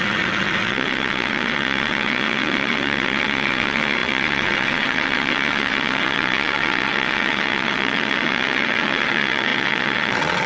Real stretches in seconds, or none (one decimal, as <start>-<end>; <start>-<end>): none